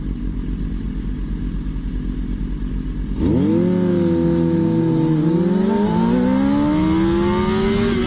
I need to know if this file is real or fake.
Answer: real